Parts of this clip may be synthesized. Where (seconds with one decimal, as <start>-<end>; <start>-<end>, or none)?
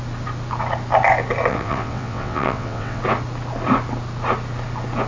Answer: 1.5-3.0